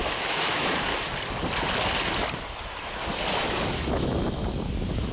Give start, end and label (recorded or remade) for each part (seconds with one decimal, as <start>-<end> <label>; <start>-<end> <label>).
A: 0.0-0.9 remade; 0.9-4.0 recorded; 4.0-4.4 remade; 4.4-5.1 recorded